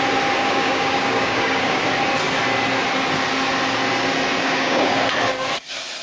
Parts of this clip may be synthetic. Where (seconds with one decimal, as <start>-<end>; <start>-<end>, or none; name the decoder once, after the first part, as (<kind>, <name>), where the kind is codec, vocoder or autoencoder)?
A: 0.4-1.8 (codec, DAC); 4.4-4.9